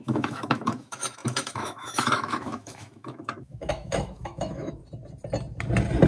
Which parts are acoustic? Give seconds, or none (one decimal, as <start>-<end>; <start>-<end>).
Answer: 4.8-6.1